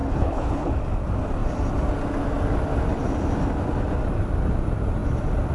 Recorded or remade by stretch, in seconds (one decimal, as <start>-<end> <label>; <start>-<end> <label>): 0.0-0.7 remade; 0.7-5.5 recorded